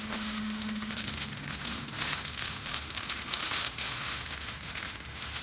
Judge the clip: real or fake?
fake